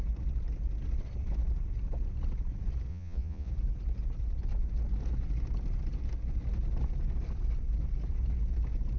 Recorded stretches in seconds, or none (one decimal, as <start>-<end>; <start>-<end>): 0.0-2.9; 3.5-9.0